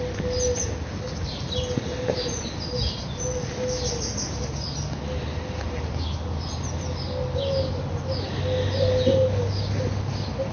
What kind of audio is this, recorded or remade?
recorded